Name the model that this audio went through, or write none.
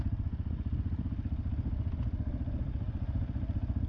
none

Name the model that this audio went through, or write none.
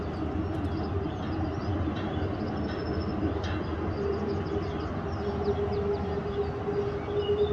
none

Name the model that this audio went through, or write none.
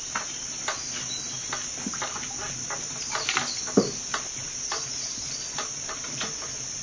none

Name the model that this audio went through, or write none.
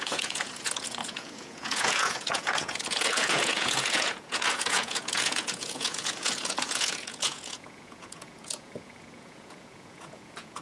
vocoder, Vocos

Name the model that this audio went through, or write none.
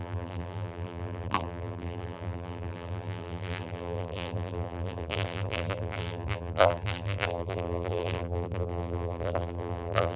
vocoder, BigVGAN v2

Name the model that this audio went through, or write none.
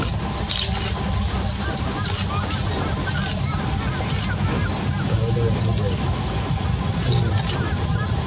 none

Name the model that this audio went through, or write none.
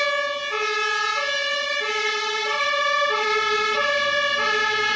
none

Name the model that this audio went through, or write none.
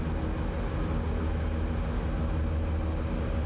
none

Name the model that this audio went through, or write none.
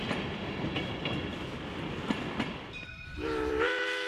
vocoder, BigVGAN v2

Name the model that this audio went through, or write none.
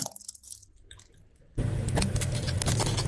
none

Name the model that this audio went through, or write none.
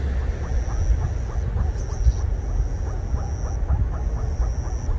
none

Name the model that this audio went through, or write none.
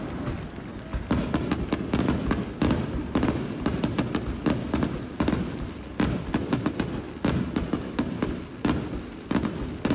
none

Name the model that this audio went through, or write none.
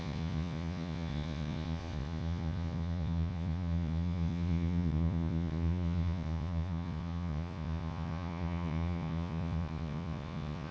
vocoder, Vocos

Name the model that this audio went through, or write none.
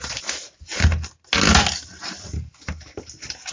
none